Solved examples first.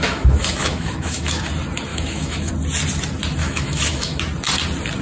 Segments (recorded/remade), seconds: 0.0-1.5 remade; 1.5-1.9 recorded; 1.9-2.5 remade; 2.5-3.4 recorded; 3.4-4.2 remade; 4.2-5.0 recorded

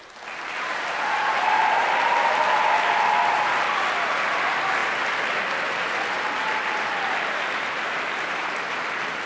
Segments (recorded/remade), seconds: 0.0-9.3 recorded

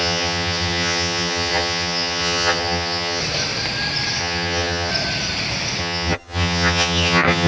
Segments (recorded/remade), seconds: 0.0-3.2 remade; 3.2-4.2 recorded; 4.2-4.9 remade; 4.9-5.8 recorded; 5.8-7.5 remade

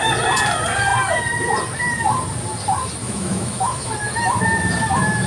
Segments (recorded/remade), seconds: 0.0-3.0 recorded; 3.0-3.9 remade; 3.9-5.3 recorded

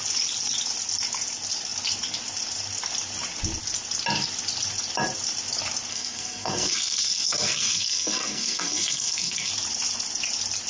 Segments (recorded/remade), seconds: 0.0-5.9 recorded; 5.9-9.5 remade; 9.5-10.7 recorded

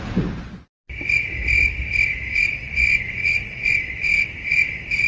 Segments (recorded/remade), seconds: 0.0-2.6 recorded; 2.6-3.7 remade; 3.7-5.1 recorded

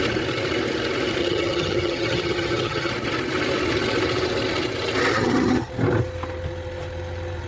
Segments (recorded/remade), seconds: 0.0-1.2 recorded; 1.2-2.9 remade; 2.9-5.1 recorded; 5.1-5.7 remade; 5.7-7.5 recorded

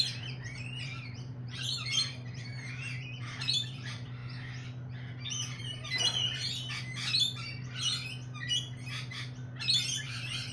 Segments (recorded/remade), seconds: 0.0-4.2 remade; 4.2-5.6 recorded; 5.6-6.4 remade; 6.4-10.0 recorded; 10.0-10.5 remade